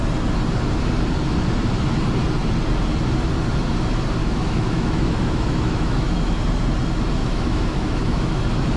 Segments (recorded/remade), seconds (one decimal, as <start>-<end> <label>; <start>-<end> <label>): 0.0-4.2 recorded; 4.2-6.4 remade; 6.4-7.2 recorded; 7.2-8.4 remade; 8.4-8.8 recorded